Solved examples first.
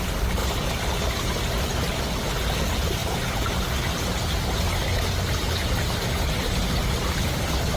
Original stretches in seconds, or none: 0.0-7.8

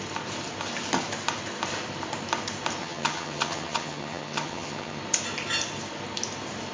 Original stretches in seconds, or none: 0.0-2.8; 5.0-6.7

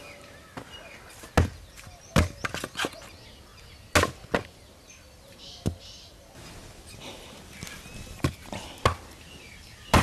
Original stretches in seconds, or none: 0.0-10.0

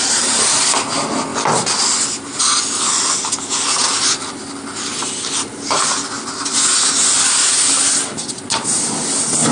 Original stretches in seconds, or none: 0.0-9.5

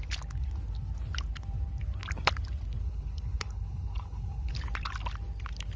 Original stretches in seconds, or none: 0.0-2.8; 4.5-5.8

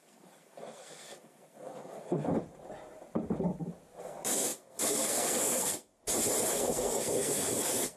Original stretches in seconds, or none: 2.3-4.0; 5.9-6.5